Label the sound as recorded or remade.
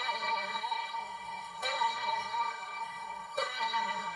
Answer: remade